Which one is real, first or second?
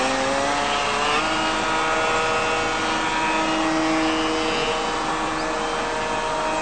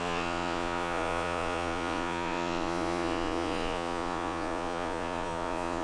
first